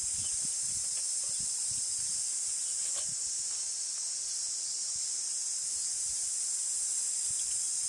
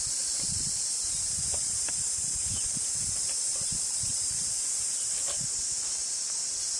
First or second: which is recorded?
first